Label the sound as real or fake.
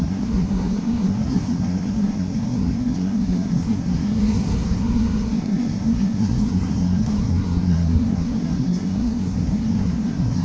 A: fake